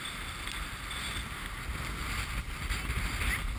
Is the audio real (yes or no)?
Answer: yes